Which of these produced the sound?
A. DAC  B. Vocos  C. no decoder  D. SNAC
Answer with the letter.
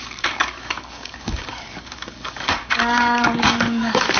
A